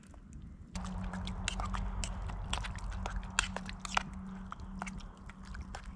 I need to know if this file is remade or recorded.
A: recorded